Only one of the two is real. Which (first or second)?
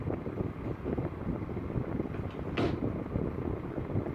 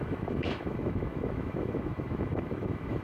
first